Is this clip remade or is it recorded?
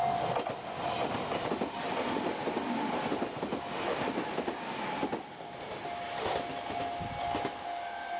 recorded